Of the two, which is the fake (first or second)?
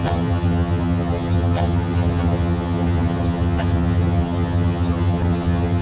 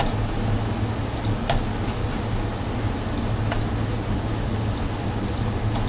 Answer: first